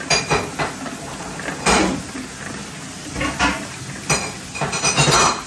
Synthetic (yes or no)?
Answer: no